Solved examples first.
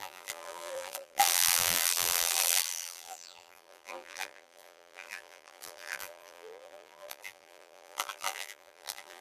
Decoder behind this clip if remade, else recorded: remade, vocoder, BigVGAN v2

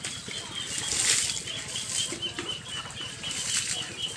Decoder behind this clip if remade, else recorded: recorded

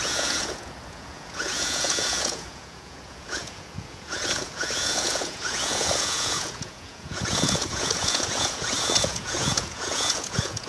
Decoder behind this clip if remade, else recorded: remade, vocoder, Vocos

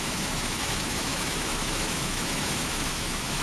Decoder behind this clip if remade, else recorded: remade, autoencoder, DAC-VAE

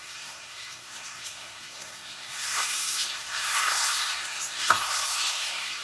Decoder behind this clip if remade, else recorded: remade, codec, SNAC